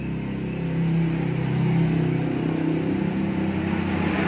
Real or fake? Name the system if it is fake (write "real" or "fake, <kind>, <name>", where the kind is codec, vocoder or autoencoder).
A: real